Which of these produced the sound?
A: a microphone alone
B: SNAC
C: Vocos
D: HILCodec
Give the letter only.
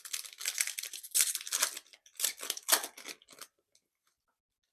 A